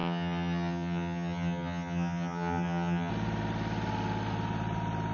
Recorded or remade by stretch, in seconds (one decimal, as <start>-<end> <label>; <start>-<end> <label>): 0.0-3.1 remade; 3.1-5.1 recorded